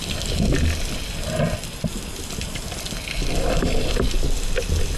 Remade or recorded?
recorded